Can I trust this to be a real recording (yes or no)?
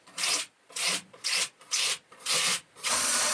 no